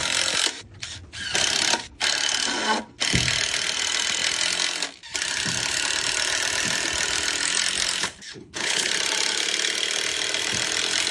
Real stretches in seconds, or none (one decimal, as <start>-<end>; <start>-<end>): 0.0-8.0; 8.9-11.1